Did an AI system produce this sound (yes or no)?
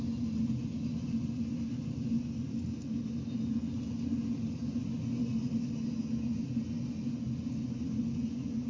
no